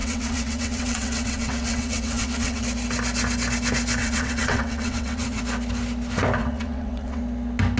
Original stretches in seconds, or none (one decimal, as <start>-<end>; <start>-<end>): 2.6-4.0; 5.4-6.4; 7.2-7.8